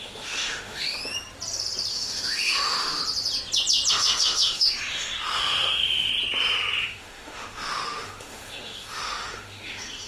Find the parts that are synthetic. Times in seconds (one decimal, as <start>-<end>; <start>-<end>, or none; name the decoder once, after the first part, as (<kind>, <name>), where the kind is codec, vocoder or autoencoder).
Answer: 0.0-1.0 (autoencoder, DAC-VAE); 1.9-3.0; 3.9-6.1; 6.8-10.1